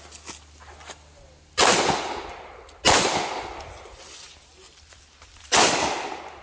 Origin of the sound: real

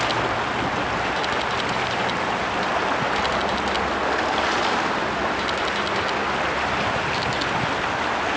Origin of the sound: real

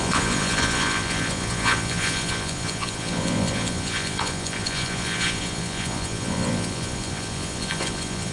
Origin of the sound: fake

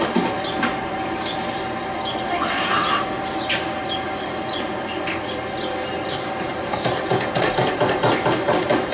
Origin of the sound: fake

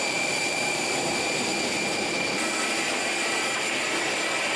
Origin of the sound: fake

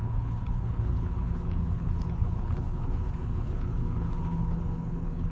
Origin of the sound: fake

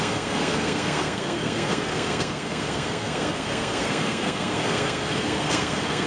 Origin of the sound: fake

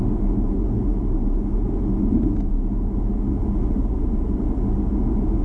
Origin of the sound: real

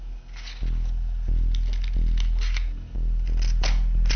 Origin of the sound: real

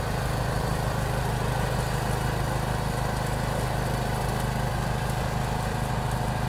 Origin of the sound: real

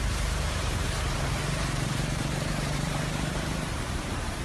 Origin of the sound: fake